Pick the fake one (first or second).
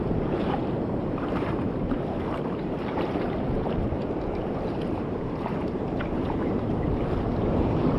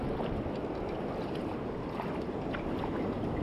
first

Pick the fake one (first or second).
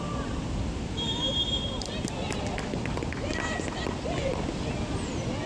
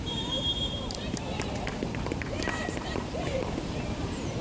second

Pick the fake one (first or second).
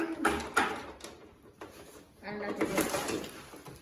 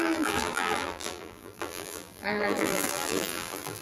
second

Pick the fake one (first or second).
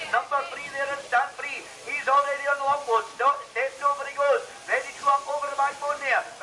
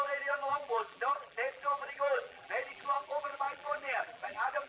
second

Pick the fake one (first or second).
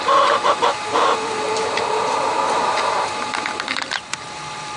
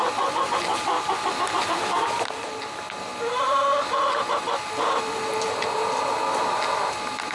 first